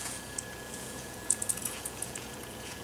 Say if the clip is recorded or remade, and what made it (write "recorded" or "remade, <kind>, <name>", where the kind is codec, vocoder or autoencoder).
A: remade, vocoder, Vocos